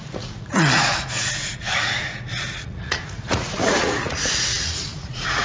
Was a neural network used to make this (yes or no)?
yes